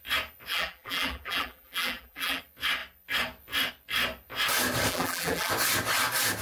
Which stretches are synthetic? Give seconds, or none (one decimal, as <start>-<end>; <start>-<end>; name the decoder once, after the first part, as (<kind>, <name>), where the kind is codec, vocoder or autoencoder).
0.5-2.4 (vocoder, BigVGAN v2); 4.9-5.5